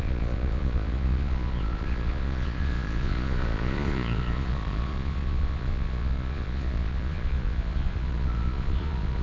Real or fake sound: fake